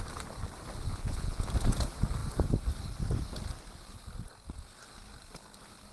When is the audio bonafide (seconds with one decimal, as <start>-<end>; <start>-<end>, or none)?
0.0-0.9; 1.5-5.9